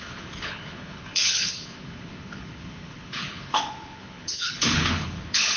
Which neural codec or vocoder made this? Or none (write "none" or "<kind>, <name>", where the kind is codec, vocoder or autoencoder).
codec, HILCodec